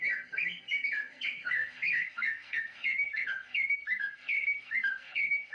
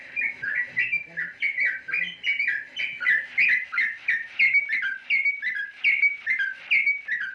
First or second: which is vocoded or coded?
first